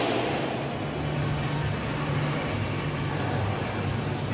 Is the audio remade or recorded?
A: recorded